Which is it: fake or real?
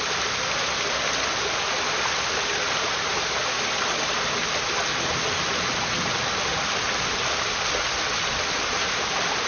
real